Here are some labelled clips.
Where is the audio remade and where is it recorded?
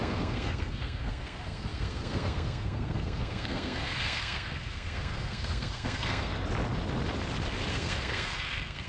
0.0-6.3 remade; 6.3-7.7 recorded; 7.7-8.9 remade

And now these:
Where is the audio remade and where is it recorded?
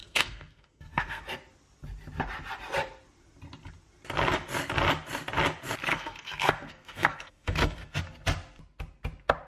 0.0-1.2 remade; 1.2-5.9 recorded; 5.9-8.0 remade; 8.0-9.5 recorded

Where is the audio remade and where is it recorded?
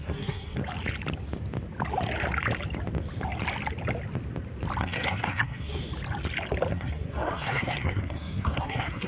0.0-0.6 remade; 0.6-4.8 recorded; 4.8-5.8 remade; 5.8-6.7 recorded; 6.7-9.1 remade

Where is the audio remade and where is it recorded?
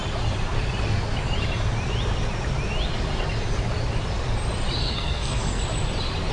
0.0-4.8 recorded; 4.8-5.6 remade; 5.6-6.3 recorded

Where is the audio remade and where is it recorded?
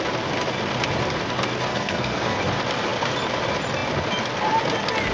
0.0-1.7 recorded; 1.7-2.4 remade; 2.4-5.1 recorded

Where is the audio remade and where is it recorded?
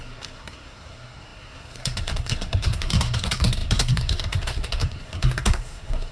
0.0-6.1 remade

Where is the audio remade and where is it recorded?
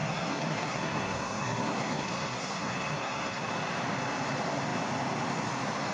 0.0-3.5 remade; 3.5-5.9 recorded